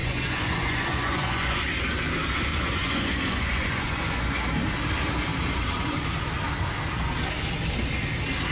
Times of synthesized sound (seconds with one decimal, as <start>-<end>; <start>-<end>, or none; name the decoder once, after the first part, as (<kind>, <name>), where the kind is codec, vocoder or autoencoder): 0.0-1.6 (vocoder, Vocos); 2.5-4.4